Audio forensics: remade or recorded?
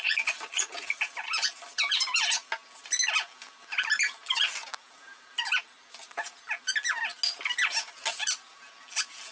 recorded